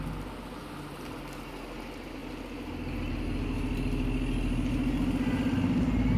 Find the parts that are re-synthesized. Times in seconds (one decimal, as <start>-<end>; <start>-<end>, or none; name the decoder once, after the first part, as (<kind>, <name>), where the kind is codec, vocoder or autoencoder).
none

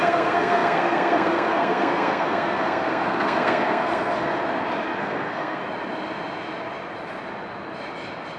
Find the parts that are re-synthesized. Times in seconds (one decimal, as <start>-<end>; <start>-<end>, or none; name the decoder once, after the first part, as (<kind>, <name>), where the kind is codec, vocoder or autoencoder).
0.0-4.3 (codec, SNAC); 5.0-5.6

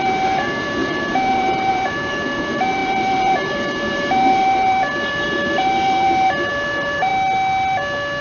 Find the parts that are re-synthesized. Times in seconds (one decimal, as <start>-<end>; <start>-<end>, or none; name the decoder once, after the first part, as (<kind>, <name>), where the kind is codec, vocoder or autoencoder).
0.0-7.1 (vocoder, BigVGAN v2)

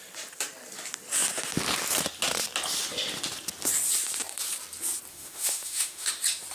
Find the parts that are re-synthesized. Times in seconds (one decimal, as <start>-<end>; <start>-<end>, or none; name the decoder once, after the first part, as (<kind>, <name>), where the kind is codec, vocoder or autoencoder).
5.1-6.1 (autoencoder, DAC-VAE)

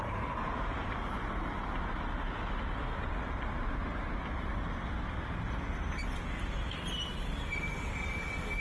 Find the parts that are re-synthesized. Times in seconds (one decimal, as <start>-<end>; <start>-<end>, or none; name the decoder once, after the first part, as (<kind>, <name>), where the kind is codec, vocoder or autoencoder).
none

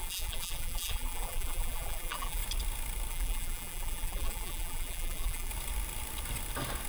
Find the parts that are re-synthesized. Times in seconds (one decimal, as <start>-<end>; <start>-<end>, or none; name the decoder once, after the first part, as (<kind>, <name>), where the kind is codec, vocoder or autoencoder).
0.0-2.4 (vocoder, BigVGAN v2); 3.1-5.5

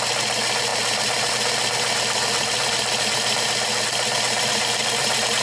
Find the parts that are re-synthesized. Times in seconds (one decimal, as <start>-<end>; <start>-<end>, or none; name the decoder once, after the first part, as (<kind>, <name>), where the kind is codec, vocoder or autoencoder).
none

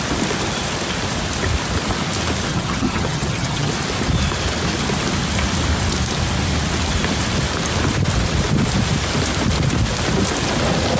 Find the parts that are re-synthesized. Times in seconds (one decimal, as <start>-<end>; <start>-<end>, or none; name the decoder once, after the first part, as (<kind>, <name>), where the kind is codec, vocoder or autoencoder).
2.5-3.7 (vocoder, HiFi-GAN)